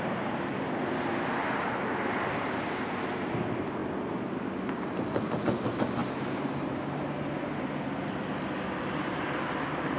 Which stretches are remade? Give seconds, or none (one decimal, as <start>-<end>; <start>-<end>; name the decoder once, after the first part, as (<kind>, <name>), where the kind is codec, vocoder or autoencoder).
none